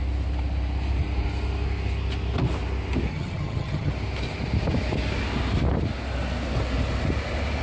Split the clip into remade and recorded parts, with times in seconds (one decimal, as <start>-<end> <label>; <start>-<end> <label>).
0.0-3.1 recorded; 3.1-3.9 remade; 3.9-7.6 recorded